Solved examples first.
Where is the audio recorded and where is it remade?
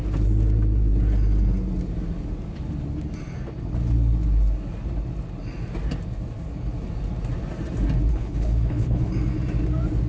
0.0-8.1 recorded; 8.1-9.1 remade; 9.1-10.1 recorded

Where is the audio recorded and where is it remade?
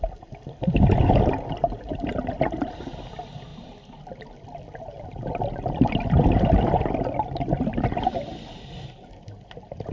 0.0-9.9 recorded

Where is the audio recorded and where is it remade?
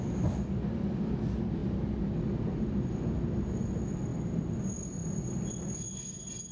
0.0-6.5 recorded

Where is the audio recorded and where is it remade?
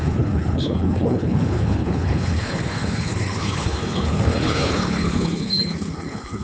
0.0-6.4 remade